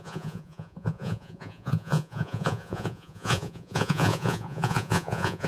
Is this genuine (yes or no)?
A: no